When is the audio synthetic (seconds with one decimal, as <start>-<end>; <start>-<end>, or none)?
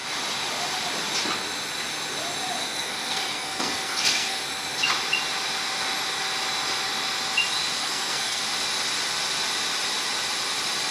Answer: 2.6-4.4; 7.8-8.4